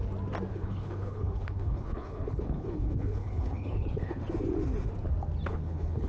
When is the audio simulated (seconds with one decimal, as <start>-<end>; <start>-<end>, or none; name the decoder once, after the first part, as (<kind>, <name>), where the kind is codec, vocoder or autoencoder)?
0.5-4.2 (codec, HILCodec); 5.5-6.1